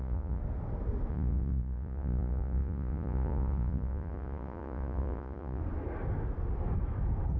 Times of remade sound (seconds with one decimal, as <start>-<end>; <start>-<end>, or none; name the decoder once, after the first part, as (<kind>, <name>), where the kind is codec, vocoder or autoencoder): 0.0-0.4 (vocoder, Vocos); 1.1-5.6